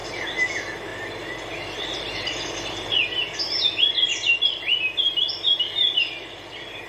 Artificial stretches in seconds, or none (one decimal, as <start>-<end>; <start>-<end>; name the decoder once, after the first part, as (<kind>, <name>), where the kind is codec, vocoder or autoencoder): 0.9-2.9 (vocoder, BigVGAN v2)